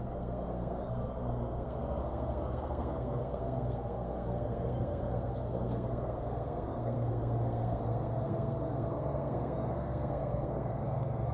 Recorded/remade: remade